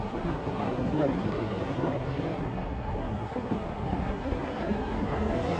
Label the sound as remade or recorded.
remade